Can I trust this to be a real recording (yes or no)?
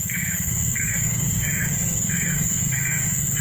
no